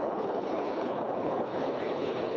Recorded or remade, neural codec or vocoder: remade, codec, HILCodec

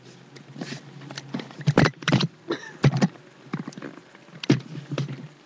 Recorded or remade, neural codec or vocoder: recorded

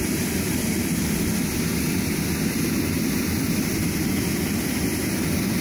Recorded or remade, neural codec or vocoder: recorded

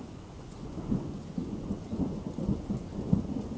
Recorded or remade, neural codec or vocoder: remade, vocoder, Vocos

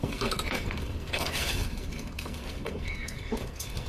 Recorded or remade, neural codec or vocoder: remade, codec, SNAC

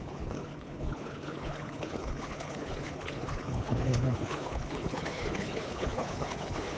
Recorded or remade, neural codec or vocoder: remade, codec, HILCodec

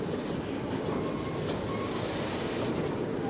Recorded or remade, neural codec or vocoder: recorded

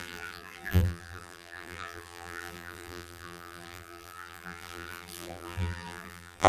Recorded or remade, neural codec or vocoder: remade, vocoder, BigVGAN v2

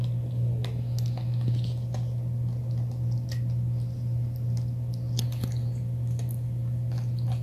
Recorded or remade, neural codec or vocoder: recorded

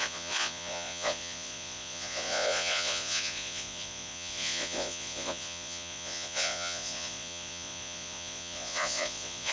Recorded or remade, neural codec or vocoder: remade, vocoder, Vocos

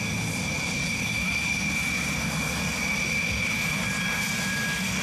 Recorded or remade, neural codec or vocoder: recorded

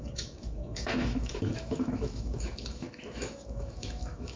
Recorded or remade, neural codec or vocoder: remade, autoencoder, DAC-VAE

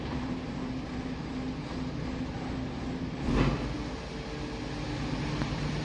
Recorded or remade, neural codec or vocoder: recorded